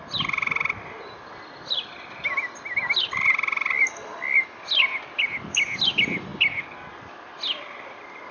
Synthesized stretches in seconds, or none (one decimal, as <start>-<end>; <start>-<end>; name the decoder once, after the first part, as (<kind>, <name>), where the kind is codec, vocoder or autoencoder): none

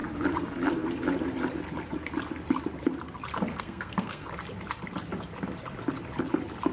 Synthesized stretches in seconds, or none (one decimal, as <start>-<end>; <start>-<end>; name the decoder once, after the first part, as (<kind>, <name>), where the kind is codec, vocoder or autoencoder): 3.5-4.3 (codec, SNAC)